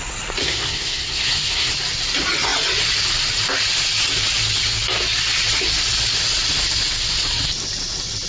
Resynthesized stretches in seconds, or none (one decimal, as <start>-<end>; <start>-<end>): 0.4-1.7